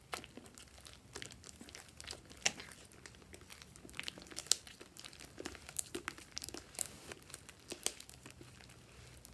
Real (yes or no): yes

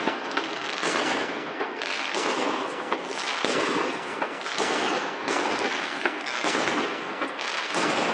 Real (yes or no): no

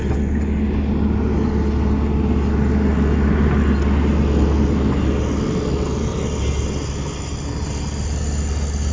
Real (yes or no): yes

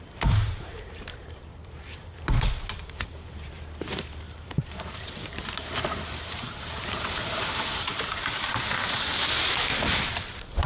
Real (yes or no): no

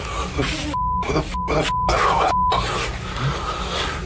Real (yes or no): yes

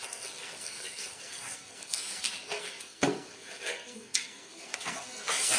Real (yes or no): no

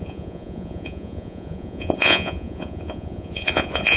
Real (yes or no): no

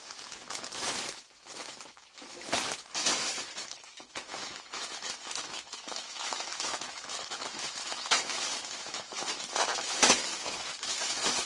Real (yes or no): no